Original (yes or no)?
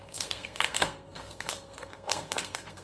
no